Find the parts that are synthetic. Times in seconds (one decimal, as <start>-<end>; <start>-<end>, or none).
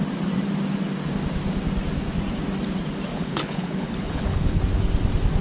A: 3.1-4.6